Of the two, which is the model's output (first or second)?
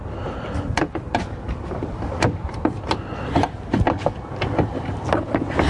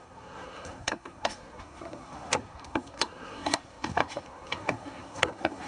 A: second